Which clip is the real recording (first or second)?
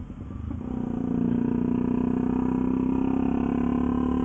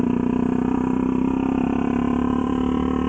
first